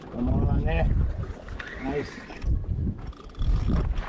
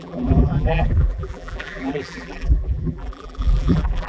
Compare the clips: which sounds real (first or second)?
first